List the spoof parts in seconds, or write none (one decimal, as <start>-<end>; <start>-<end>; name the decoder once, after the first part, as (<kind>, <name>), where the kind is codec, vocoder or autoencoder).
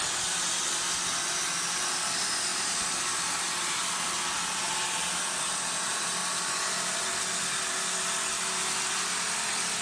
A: none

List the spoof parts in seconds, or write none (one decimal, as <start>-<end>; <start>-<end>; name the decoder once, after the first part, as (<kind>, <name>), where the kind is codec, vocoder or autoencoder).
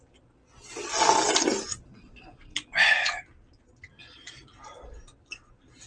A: none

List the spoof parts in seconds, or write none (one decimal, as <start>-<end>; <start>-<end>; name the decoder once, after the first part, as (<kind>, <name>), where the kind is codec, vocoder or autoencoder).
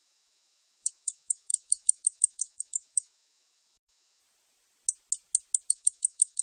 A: 0.0-4.2 (autoencoder, DAC-VAE); 5.7-6.4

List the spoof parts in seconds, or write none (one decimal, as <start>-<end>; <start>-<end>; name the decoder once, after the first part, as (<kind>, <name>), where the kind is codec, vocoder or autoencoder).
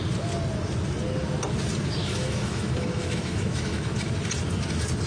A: 2.0-4.0 (autoencoder, DAC-VAE)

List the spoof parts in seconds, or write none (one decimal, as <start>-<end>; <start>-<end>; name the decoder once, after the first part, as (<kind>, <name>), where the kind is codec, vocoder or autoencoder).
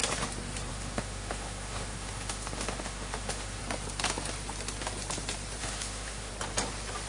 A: 0.7-3.6 (autoencoder, DAC-VAE); 5.6-6.3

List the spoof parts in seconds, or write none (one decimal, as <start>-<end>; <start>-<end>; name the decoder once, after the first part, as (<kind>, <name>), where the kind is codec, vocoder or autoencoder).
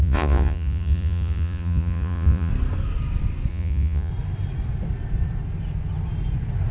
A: 0.0-2.5 (vocoder, Vocos); 3.5-4.1